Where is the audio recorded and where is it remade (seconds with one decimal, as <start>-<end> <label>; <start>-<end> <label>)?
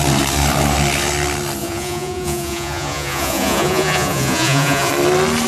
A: 0.0-1.6 recorded; 1.6-4.9 remade; 4.9-5.5 recorded